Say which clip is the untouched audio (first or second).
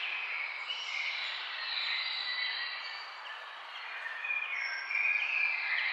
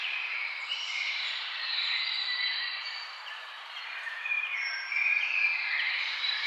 first